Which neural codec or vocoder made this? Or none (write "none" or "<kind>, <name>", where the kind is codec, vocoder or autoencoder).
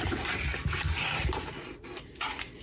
none